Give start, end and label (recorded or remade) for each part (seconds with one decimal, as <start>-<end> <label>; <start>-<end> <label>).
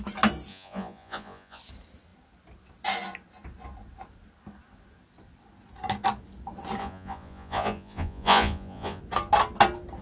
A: 0.0-0.5 recorded; 0.5-1.6 remade; 1.6-6.8 recorded; 6.8-9.0 remade; 9.0-10.0 recorded